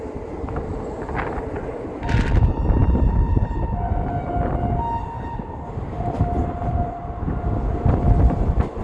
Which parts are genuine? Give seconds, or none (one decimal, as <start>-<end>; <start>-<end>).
0.0-8.8